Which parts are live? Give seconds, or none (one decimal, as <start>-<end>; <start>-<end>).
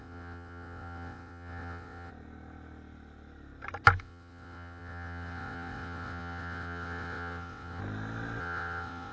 2.1-4.0; 7.8-8.4